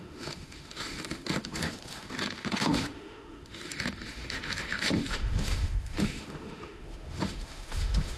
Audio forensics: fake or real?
fake